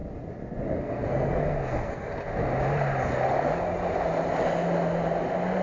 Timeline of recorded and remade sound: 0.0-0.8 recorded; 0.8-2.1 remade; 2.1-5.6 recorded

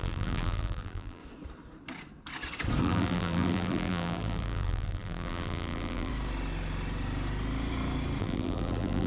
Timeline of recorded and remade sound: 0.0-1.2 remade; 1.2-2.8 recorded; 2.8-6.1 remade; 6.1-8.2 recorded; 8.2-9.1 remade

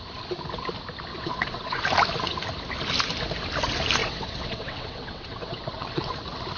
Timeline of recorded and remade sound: 0.0-1.1 recorded; 1.1-1.8 remade; 1.8-4.0 recorded; 4.0-6.1 remade; 6.1-6.6 recorded